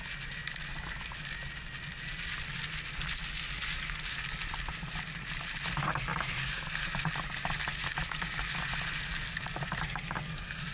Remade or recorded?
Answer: recorded